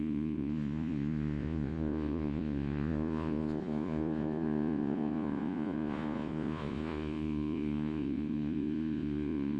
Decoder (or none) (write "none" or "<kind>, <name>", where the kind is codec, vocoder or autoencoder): vocoder, Vocos